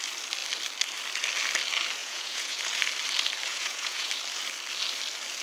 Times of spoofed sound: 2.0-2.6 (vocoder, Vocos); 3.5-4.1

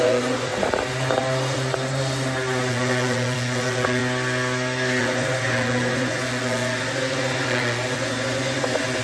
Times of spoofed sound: 0.0-0.5 (vocoder, Vocos); 2.7-4.0; 5.0-9.0

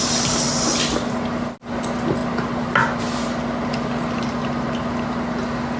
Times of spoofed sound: none

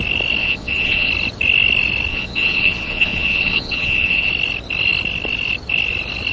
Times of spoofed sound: 0.4-1.1 (vocoder, Vocos); 2.1-4.3

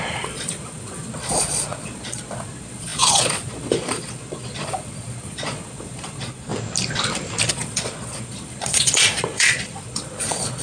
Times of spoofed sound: 0.0-6.5 (vocoder, Vocos); 7.5-10.6